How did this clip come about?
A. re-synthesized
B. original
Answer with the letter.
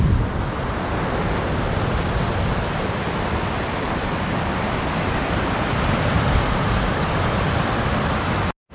B